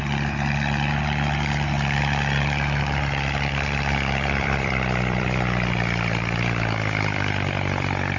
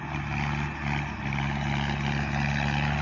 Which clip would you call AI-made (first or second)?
first